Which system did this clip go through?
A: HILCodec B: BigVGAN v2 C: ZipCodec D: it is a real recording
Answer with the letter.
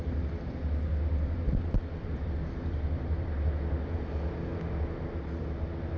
D